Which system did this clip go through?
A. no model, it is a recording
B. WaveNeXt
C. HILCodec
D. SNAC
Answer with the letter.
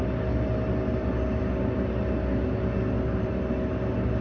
A